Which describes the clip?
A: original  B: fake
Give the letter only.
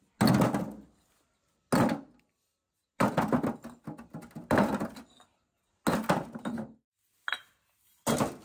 A